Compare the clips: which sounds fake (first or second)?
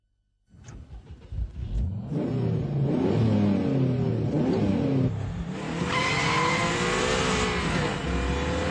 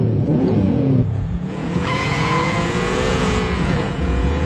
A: second